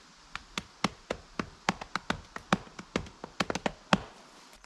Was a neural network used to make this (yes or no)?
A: no